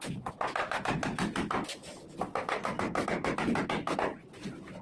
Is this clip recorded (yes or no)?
yes